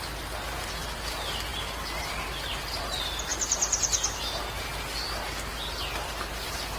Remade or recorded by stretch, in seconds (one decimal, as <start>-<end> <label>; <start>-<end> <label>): 0.0-6.8 recorded